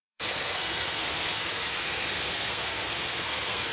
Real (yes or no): no